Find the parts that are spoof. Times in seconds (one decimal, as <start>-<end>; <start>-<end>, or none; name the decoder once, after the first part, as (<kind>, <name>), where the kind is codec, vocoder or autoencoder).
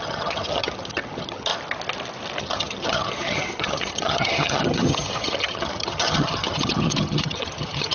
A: 0.0-1.5 (vocoder, HiFi-GAN); 2.4-7.9